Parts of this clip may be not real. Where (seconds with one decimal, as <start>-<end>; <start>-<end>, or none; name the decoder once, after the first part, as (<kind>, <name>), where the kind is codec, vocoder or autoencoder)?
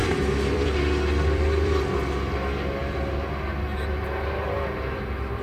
0.0-1.8 (vocoder, BigVGAN v2)